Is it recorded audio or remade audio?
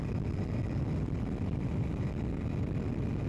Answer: recorded